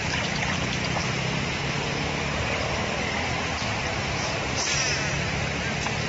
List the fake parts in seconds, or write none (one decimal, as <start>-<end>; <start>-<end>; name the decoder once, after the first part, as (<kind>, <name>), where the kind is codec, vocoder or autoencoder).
none